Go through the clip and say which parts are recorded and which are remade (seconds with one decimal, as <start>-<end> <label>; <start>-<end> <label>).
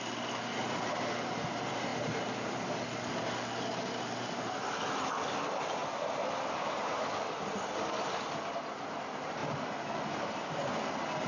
0.0-1.9 recorded; 1.9-2.5 remade; 2.5-11.3 recorded